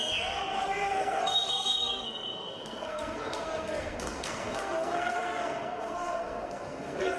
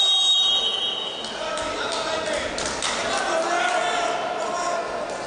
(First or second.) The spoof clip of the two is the first